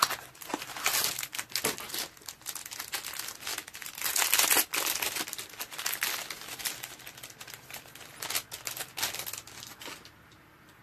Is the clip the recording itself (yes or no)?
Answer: yes